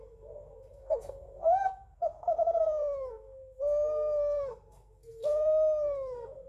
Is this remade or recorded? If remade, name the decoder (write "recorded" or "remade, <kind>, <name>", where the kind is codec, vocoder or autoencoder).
remade, codec, SNAC